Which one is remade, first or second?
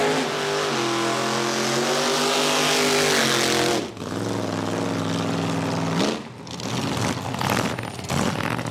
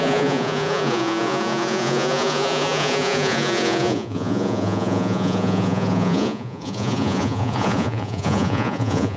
second